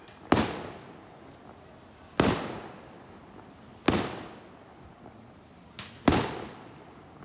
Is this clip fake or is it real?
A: real